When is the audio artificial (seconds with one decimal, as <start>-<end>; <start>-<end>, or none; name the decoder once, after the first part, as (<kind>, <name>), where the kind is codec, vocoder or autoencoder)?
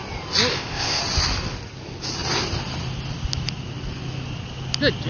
0.5-1.0 (codec, ZipCodec)